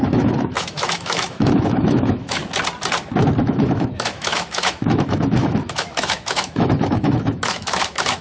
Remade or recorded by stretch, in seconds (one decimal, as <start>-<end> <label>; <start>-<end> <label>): 0.0-2.4 remade; 2.4-3.4 recorded; 3.4-8.2 remade